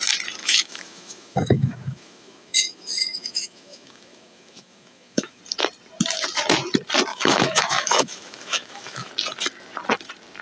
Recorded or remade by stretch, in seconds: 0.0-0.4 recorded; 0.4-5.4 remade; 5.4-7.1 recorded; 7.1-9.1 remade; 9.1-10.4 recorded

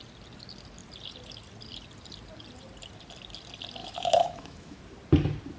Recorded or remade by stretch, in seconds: 0.0-3.8 recorded; 3.8-4.8 remade; 4.8-5.6 recorded

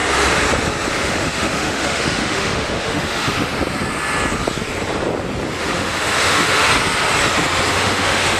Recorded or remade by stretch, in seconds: 0.0-0.9 recorded; 0.9-3.5 remade; 3.5-5.6 recorded; 5.6-6.7 remade; 6.7-7.7 recorded; 7.7-8.4 remade

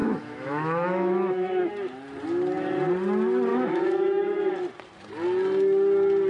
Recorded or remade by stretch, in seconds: 0.0-1.7 remade; 1.7-3.5 recorded; 3.5-4.5 remade; 4.5-6.3 recorded

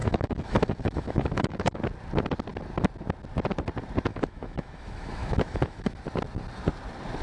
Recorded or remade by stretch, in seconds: 0.0-1.8 remade; 1.8-4.1 recorded; 4.1-6.0 remade; 6.0-7.2 recorded

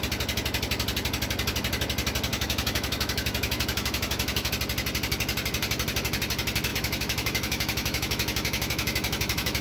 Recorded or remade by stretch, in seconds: 0.0-2.3 recorded; 2.3-4.5 remade; 4.5-6.7 recorded; 6.7-9.6 remade

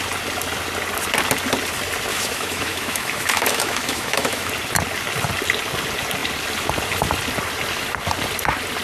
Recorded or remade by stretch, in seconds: 0.0-2.1 recorded; 2.1-4.5 remade; 4.5-8.8 recorded